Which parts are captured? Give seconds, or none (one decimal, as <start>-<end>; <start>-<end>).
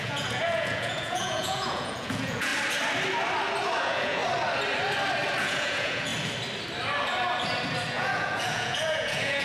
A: 2.5-3.8; 4.2-5.4; 6.1-7.9